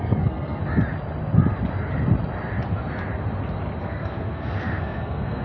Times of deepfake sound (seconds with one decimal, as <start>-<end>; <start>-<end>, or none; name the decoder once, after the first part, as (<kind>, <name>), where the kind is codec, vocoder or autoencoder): 0.0-0.6 (codec, SNAC); 3.8-5.4